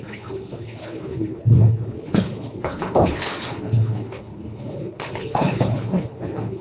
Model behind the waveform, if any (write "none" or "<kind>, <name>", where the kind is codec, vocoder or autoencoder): codec, HILCodec